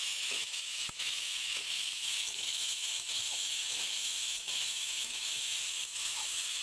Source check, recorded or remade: remade